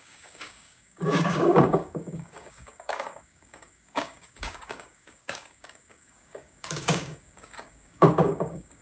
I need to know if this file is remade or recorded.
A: remade